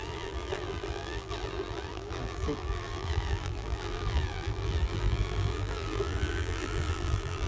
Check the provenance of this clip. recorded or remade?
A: remade